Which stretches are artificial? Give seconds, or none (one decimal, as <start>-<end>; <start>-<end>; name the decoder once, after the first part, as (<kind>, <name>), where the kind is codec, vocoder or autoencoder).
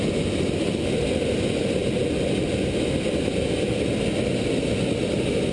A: none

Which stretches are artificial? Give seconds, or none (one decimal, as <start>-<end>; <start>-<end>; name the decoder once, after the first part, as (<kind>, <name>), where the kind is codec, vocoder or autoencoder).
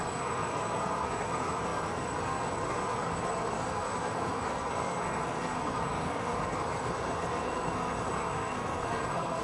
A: 0.0-9.4 (codec, SNAC)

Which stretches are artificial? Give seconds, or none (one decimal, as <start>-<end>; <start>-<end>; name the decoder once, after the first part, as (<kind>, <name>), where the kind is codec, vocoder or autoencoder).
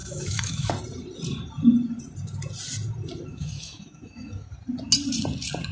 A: 0.0-0.7 (autoencoder, DAC-VAE); 3.3-4.5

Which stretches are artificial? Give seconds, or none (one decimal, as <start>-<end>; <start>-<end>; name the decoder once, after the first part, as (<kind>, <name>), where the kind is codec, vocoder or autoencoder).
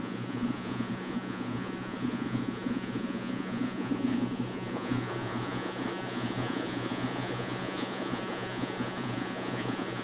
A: 0.0-10.0 (vocoder, Vocos)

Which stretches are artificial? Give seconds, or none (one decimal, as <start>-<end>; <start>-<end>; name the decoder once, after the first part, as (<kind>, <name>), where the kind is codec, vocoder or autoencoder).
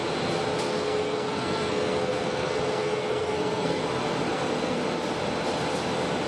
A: 0.6-3.8 (codec, SNAC); 4.3-4.8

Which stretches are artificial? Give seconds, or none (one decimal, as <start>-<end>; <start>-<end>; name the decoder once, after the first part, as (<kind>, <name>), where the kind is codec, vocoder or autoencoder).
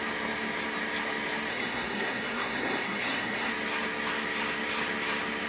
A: 1.5-3.5 (codec, SNAC)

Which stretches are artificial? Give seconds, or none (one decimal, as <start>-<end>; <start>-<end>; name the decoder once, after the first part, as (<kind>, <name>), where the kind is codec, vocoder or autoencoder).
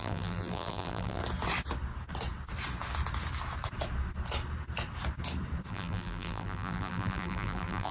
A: 0.0-1.2 (vocoder, BigVGAN v2); 5.7-7.9